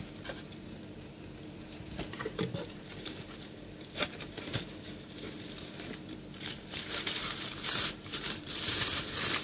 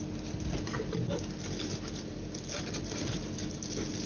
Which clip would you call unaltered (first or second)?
second